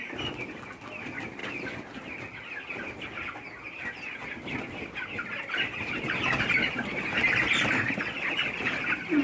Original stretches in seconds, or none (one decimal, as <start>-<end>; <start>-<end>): 0.0-9.2